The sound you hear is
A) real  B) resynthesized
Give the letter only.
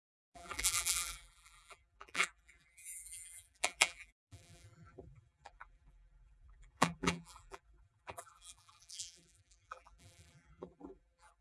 B